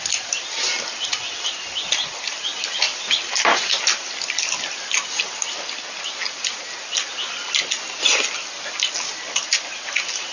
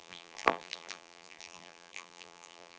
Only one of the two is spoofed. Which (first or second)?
second